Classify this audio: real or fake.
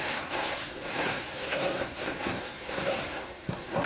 fake